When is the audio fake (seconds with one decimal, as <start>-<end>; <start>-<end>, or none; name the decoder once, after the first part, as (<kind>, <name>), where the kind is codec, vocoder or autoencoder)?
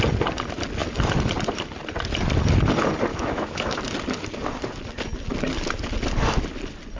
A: 3.1-3.8 (autoencoder, DAC-VAE)